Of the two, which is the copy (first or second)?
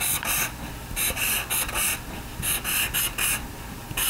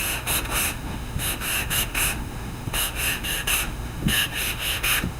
second